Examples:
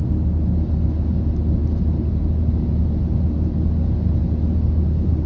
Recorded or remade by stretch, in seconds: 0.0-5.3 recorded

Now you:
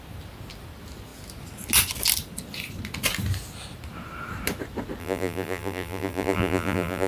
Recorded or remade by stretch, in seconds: 0.0-5.0 recorded; 5.0-7.1 remade

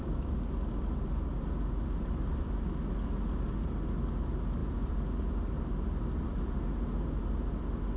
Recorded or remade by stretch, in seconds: 0.0-8.0 recorded

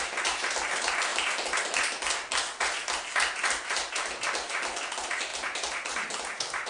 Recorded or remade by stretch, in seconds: 0.0-6.7 recorded